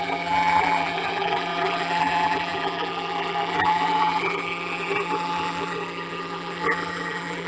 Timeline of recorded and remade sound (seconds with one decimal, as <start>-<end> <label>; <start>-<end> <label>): 0.0-7.5 remade